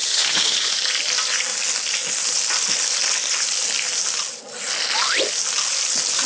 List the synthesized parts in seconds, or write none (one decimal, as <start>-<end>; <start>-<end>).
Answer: 0.0-0.7